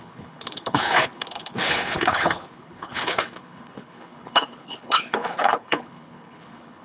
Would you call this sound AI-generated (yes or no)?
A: yes